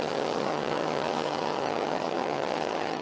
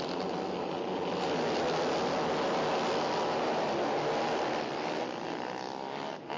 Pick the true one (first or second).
second